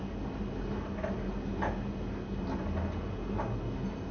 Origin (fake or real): real